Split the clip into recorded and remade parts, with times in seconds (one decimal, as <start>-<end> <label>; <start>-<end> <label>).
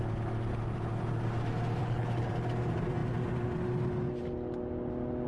0.0-1.8 recorded; 1.8-2.3 remade; 2.3-5.3 recorded